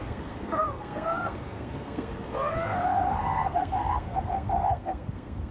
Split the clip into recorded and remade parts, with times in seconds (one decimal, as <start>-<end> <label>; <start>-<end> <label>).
0.0-5.5 remade